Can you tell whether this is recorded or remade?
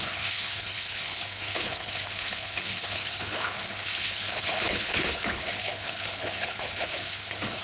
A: remade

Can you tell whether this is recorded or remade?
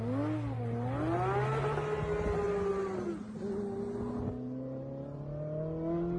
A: recorded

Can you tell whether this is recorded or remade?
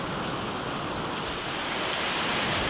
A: recorded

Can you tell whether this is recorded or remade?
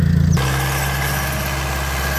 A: recorded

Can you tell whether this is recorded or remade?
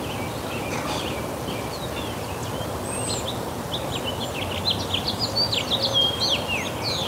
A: recorded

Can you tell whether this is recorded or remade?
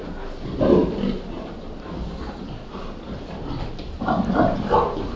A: recorded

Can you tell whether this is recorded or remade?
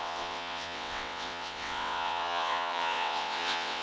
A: remade